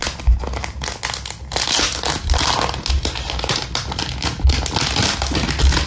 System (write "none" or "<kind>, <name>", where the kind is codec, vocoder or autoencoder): none